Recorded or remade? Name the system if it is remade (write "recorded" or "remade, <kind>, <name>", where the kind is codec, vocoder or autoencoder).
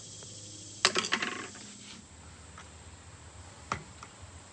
recorded